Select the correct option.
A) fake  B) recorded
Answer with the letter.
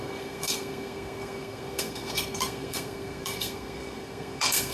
A